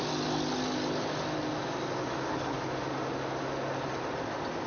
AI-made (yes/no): no